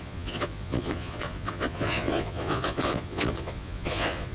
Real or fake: fake